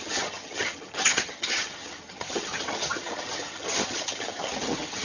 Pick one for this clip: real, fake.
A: fake